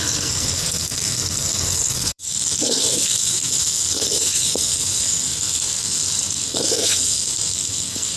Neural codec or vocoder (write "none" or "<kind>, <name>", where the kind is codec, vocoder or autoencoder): codec, SNAC